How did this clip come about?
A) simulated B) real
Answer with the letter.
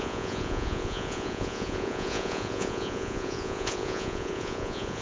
A